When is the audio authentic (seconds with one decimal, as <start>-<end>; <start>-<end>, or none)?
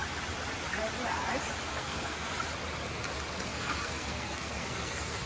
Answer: 0.0-1.7; 2.3-3.5